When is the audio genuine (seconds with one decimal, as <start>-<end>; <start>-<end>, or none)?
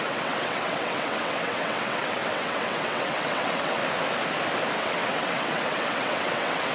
3.8-4.8